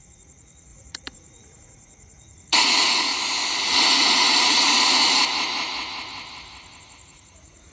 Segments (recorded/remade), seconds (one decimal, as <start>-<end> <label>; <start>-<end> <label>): 0.0-3.1 remade; 3.1-3.7 recorded; 3.7-5.0 remade; 5.0-6.8 recorded; 6.8-7.7 remade